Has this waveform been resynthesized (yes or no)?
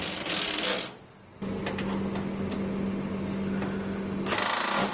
no